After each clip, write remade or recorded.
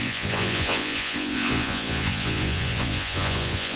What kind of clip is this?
remade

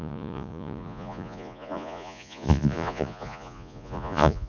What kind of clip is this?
remade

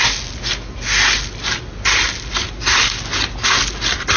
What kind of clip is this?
recorded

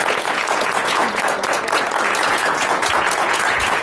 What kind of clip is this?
remade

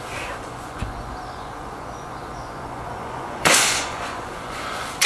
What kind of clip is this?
remade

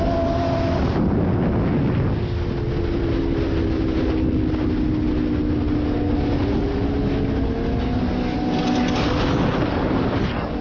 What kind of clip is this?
recorded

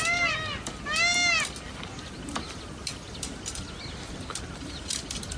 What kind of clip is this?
recorded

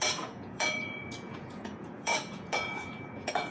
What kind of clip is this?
remade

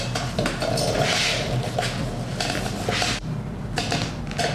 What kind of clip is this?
recorded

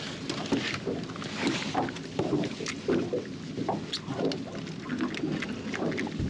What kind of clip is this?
recorded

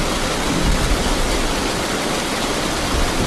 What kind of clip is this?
recorded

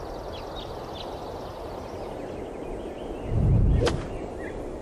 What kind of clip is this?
recorded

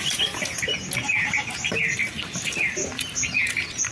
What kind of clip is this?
recorded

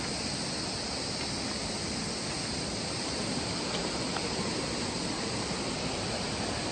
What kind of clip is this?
recorded